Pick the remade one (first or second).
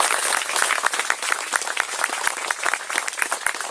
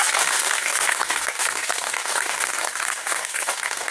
second